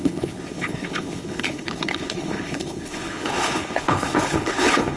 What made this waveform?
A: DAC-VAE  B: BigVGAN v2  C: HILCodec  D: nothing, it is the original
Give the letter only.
C